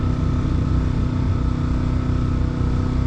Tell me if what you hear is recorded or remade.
recorded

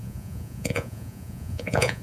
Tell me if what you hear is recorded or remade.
remade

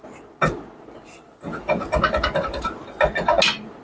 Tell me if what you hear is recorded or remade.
recorded